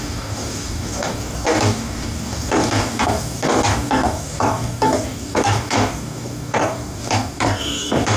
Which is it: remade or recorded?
remade